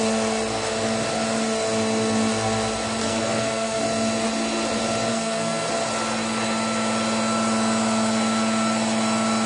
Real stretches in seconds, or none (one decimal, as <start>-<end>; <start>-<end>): 0.0-3.0; 3.8-5.1; 5.7-9.5